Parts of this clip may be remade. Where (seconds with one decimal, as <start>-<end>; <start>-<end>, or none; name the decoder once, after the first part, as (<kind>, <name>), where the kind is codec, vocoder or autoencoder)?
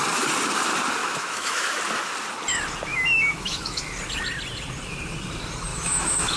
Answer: 1.0-1.8 (autoencoder, DAC-VAE); 2.9-3.8; 5.7-6.4